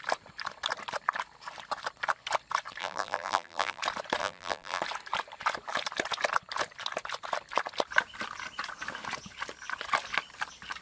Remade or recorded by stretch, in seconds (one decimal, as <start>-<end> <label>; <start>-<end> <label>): 0.0-2.8 recorded; 2.8-3.8 remade; 3.8-4.2 recorded; 4.2-4.8 remade; 4.8-10.8 recorded